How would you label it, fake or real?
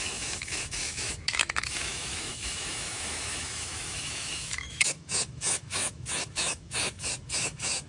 fake